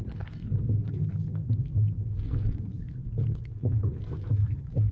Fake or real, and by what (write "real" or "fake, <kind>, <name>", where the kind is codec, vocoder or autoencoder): fake, codec, SNAC